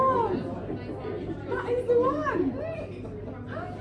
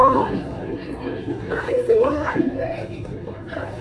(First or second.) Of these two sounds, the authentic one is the first